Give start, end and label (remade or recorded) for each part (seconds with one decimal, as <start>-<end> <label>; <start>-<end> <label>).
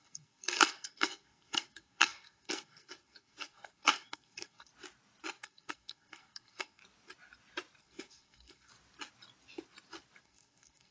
0.0-4.7 remade; 4.7-5.3 recorded; 5.3-6.8 remade; 6.8-7.8 recorded; 7.8-8.7 remade; 8.7-10.2 recorded; 10.2-10.9 remade